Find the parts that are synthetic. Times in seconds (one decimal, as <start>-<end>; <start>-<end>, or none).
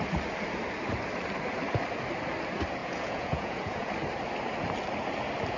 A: 2.8-3.9